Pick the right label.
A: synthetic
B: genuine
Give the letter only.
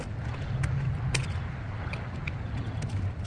B